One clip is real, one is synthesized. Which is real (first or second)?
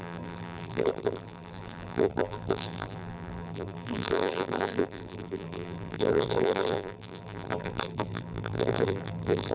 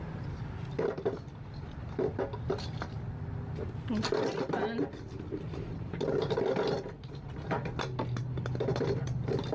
second